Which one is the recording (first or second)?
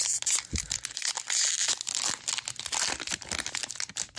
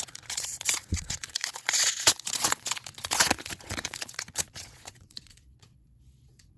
first